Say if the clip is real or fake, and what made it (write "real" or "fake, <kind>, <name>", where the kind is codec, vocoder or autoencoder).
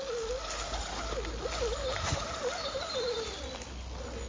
real